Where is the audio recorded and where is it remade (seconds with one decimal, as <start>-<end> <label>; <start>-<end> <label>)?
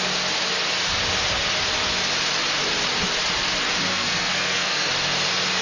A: 0.0-3.9 recorded; 3.9-4.9 remade; 4.9-5.6 recorded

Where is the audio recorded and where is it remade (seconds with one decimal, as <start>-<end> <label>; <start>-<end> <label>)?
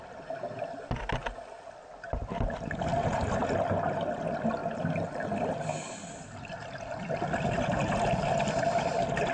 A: 0.0-9.3 recorded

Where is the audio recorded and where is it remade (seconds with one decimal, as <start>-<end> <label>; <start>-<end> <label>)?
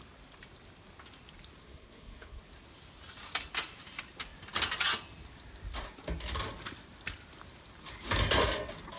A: 0.0-1.6 recorded; 1.6-2.4 remade; 2.4-9.0 recorded